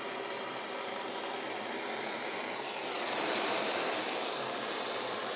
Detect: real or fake fake